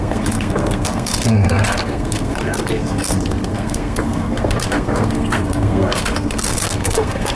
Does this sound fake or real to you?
fake